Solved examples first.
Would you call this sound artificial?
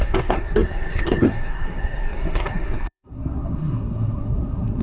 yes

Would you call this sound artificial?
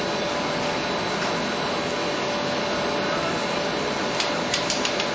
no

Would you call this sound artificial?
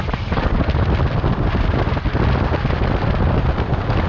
no